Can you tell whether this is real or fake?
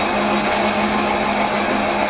real